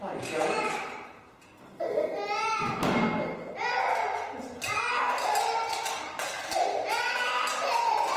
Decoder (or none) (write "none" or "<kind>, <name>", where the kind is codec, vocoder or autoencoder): none